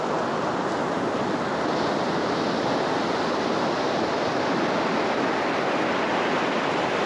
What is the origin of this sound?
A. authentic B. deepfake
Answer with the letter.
A